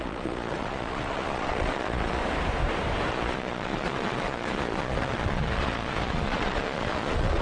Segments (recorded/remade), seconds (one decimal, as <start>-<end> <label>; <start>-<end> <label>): 0.0-2.2 remade; 2.2-3.1 recorded; 3.1-7.4 remade